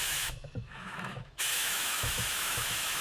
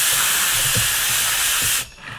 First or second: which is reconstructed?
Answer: first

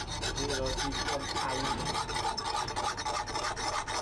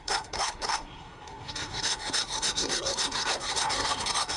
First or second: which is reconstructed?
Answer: second